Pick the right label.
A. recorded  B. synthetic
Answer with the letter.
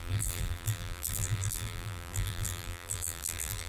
B